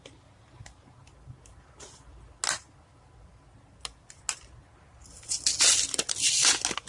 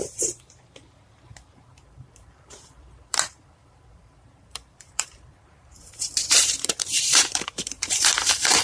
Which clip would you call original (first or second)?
first